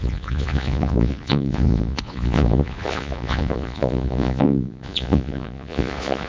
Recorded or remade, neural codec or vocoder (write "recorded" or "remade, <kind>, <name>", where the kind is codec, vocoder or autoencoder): remade, vocoder, Vocos